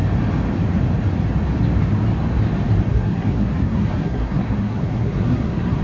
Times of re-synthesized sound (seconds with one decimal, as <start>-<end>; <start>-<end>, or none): 2.9-5.8